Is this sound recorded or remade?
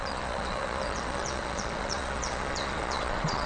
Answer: remade